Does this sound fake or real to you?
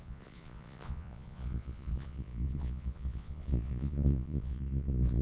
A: fake